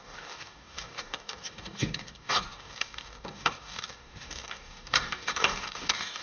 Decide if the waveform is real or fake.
fake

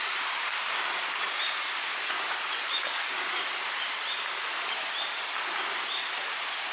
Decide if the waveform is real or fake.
fake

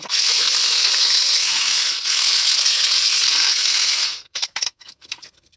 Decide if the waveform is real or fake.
fake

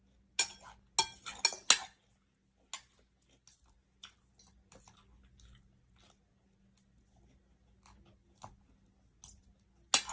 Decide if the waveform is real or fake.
real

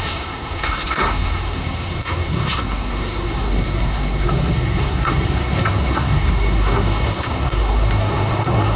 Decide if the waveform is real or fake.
fake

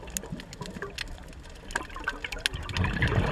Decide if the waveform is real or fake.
real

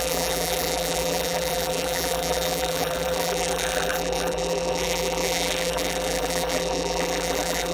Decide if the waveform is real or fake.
fake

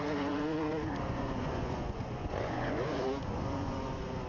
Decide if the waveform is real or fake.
fake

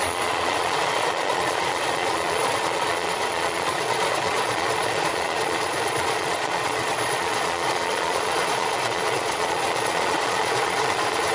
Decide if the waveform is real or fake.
fake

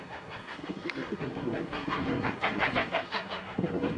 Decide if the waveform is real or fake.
fake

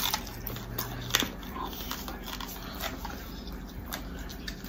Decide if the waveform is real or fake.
real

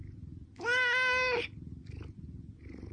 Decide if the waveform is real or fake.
real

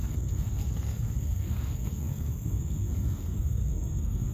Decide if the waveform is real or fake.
fake